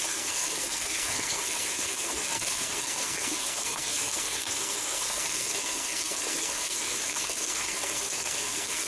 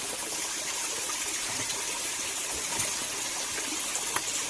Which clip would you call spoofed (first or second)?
first